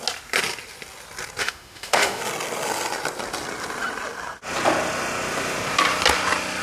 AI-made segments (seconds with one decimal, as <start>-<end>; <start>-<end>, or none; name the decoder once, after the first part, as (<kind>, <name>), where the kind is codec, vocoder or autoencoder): 1.4-2.2 (autoencoder, DAC-VAE)